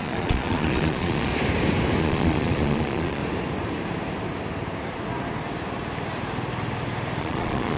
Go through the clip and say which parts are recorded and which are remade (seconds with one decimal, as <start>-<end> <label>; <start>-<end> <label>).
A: 0.0-1.3 remade; 1.3-2.0 recorded; 2.0-3.2 remade; 3.2-7.2 recorded; 7.2-7.8 remade